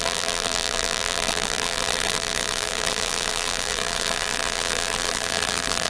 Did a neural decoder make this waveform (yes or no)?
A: yes